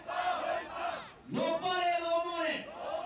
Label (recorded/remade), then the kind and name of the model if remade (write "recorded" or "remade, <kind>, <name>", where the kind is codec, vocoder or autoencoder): recorded